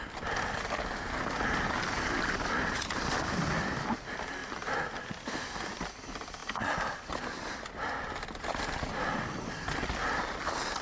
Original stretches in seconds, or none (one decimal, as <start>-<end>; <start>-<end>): 0.0-10.8